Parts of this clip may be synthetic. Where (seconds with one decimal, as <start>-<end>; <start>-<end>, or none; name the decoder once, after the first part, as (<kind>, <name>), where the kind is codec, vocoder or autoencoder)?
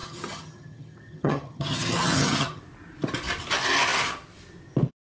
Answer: 0.0-2.6 (vocoder, HiFi-GAN)